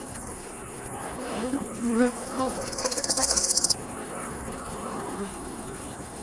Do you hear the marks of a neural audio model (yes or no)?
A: yes